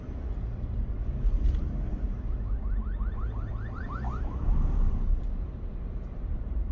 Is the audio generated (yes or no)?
yes